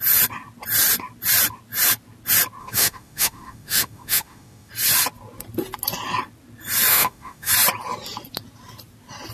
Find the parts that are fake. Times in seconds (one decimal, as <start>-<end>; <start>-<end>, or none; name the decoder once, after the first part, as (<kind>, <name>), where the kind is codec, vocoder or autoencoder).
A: 2.6-4.7 (autoencoder, DAC-VAE); 6.9-7.5